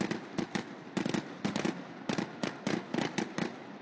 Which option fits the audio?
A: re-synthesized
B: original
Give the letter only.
A